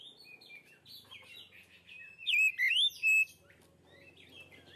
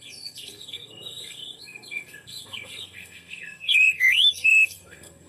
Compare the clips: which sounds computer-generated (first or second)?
second